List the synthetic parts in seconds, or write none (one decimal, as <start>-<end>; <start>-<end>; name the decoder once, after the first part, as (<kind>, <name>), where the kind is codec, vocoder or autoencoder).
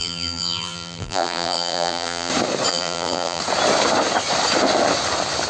0.0-2.3 (vocoder, BigVGAN v2); 2.7-3.4